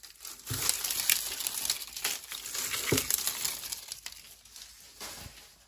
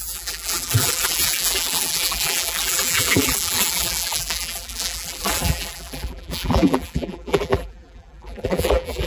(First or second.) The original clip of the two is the first